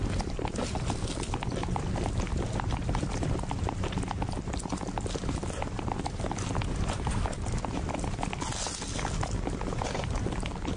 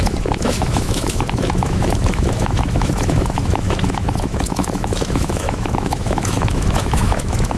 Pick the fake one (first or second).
second